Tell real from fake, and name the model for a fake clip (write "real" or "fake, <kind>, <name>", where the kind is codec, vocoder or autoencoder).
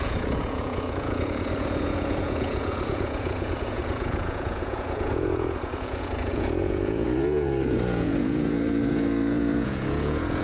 fake, vocoder, Vocos